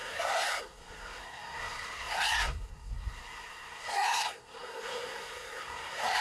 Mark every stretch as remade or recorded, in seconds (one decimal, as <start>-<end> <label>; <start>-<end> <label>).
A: 0.0-6.2 remade